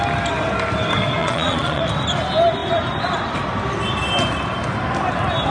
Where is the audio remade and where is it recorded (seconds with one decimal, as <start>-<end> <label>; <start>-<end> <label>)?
0.0-1.2 recorded; 1.2-1.8 remade; 1.8-5.5 recorded